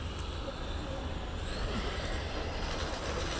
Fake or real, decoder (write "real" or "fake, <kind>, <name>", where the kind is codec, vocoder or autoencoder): real